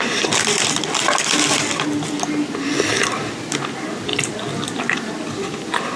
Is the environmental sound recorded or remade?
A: recorded